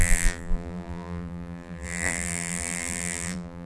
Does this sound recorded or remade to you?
remade